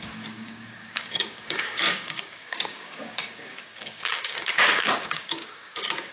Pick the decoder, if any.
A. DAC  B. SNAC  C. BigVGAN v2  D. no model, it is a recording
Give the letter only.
A